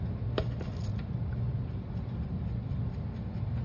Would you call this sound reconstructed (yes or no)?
no